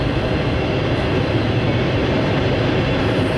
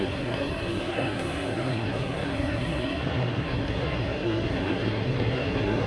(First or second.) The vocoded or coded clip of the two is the second